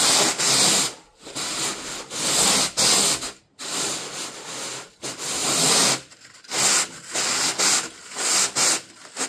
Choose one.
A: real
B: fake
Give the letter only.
A